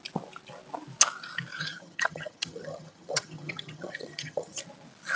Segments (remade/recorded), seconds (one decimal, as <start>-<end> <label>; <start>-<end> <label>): 0.0-1.5 recorded; 1.5-4.6 remade; 4.6-5.2 recorded

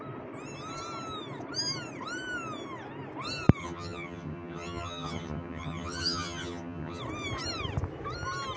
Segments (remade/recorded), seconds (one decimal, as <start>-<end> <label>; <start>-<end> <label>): 0.0-3.6 recorded; 3.6-7.0 remade; 7.0-8.6 recorded

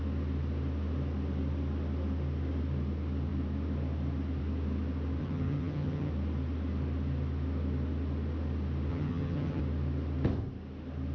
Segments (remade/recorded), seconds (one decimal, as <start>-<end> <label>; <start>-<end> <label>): 0.0-5.2 recorded; 5.2-6.1 remade; 6.1-8.9 recorded; 8.9-9.6 remade; 9.6-11.1 recorded

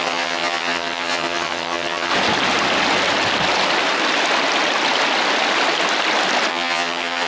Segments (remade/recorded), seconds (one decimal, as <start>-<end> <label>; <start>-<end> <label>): 0.0-2.1 remade; 2.1-6.5 recorded; 6.5-7.3 remade

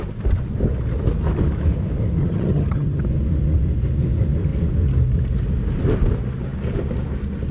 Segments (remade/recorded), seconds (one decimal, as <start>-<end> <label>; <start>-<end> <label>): 0.0-2.2 recorded; 2.2-3.0 remade; 3.0-7.5 recorded

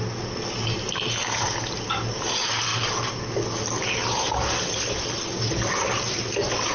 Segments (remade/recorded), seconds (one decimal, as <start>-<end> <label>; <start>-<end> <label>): 0.0-6.7 recorded

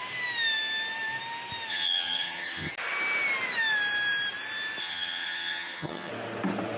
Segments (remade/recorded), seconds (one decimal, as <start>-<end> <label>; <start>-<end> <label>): 0.0-1.7 recorded; 1.7-2.7 remade; 2.7-4.8 recorded; 4.8-6.1 remade; 6.1-6.8 recorded